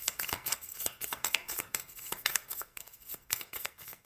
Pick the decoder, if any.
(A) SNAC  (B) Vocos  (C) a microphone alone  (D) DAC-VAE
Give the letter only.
A